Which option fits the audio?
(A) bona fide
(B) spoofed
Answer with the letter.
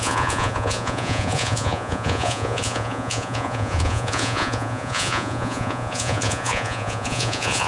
B